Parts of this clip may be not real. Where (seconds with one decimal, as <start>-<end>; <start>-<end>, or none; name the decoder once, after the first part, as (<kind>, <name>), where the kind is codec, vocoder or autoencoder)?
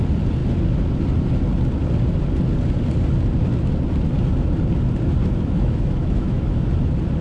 5.2-6.7 (autoencoder, DAC-VAE)